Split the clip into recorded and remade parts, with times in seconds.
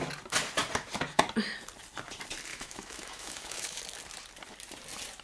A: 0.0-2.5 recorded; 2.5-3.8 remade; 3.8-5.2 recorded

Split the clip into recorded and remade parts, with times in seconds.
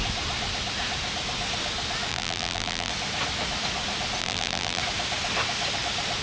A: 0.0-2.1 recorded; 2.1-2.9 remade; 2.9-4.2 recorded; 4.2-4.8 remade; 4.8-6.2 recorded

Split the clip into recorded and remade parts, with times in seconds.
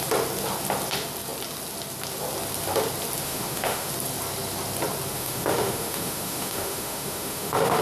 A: 0.0-3.2 recorded; 3.2-3.9 remade; 3.9-5.1 recorded; 5.1-7.8 remade